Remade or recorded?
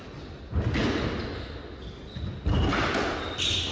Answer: recorded